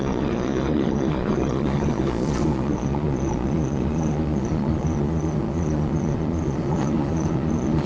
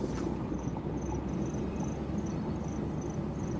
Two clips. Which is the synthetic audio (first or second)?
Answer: first